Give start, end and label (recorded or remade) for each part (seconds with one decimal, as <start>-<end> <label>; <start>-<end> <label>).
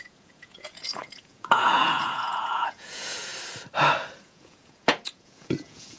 0.0-3.3 remade; 3.3-4.2 recorded; 4.2-6.0 remade